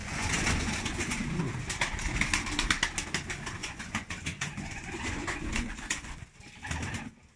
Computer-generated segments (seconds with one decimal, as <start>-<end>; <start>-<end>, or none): 0.0-1.4; 3.6-6.2